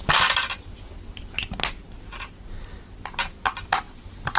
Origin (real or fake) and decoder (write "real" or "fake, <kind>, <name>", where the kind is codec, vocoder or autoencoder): real